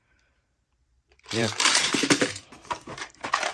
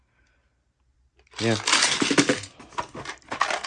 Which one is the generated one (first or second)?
first